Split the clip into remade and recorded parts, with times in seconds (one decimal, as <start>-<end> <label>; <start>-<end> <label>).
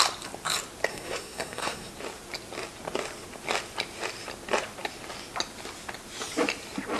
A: 0.0-0.9 recorded; 0.9-1.9 remade; 1.9-7.0 recorded